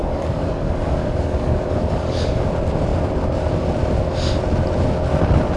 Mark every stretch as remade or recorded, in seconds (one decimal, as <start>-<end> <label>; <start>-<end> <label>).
0.0-2.5 remade; 2.5-5.6 recorded